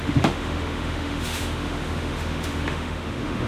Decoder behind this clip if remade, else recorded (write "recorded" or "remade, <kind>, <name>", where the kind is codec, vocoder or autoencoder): remade, autoencoder, DAC-VAE